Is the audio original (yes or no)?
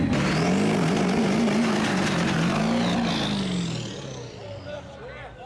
yes